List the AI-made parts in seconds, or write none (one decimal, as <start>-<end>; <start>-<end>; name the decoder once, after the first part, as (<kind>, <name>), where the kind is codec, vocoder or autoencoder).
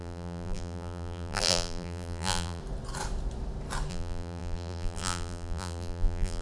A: 0.0-2.6 (vocoder, BigVGAN v2); 3.9-6.4